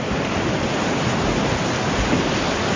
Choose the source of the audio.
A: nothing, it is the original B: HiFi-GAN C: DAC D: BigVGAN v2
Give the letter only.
A